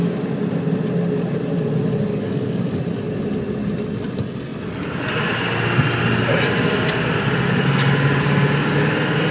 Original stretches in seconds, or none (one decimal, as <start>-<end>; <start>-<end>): 0.0-2.1; 2.8-9.3